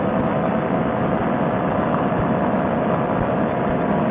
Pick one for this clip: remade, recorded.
recorded